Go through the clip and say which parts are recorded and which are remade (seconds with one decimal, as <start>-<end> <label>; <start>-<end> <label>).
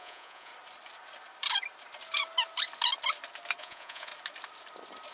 0.0-0.5 remade; 0.5-3.6 recorded; 3.6-4.1 remade; 4.1-5.1 recorded